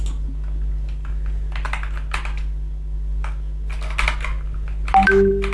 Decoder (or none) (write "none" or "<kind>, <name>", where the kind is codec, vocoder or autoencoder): none